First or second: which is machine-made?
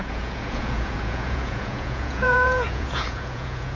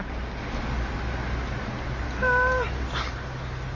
first